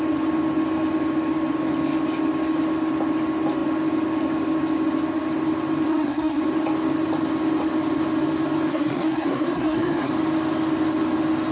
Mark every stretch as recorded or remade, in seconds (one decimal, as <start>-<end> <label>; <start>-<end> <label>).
0.0-5.9 recorded; 5.9-6.4 remade; 6.4-8.7 recorded; 8.7-10.1 remade; 10.1-11.5 recorded